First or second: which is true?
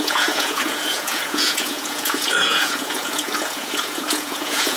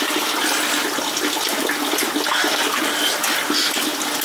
second